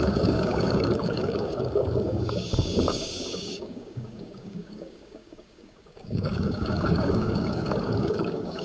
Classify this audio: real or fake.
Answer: fake